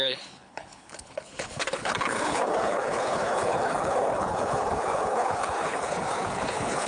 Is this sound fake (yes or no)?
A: yes